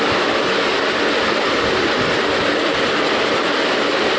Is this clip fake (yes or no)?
no